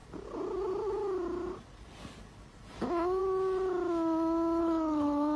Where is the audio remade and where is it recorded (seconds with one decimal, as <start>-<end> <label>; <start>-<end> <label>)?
0.0-4.6 recorded; 4.6-5.4 remade